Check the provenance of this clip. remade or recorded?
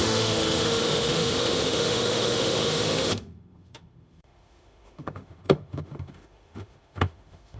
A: remade